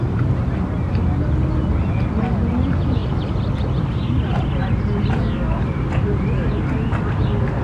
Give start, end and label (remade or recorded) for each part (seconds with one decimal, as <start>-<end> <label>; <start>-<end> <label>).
0.0-7.6 recorded